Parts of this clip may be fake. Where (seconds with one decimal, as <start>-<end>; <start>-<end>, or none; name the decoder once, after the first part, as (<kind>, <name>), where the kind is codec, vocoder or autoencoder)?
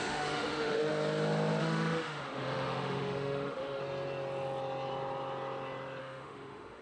0.0-0.9 (autoencoder, DAC-VAE); 1.6-3.8; 6.0-6.8